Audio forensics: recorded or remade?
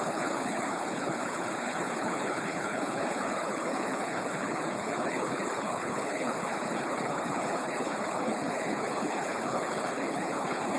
remade